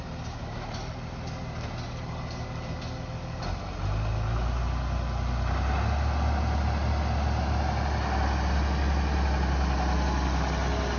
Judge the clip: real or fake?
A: real